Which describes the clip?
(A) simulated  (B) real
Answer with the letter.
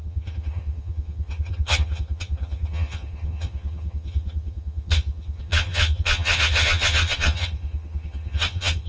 A